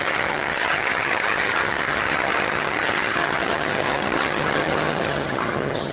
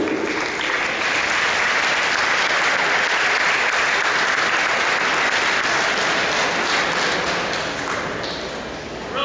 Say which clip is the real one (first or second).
second